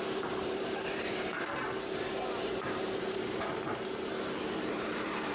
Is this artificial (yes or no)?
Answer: yes